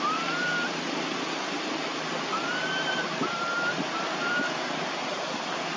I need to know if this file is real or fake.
fake